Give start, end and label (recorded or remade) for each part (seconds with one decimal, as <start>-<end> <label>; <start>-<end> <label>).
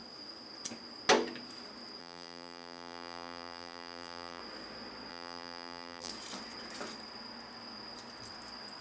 0.0-2.0 recorded; 2.0-4.4 remade; 4.4-5.1 recorded; 5.1-6.1 remade; 6.1-8.8 recorded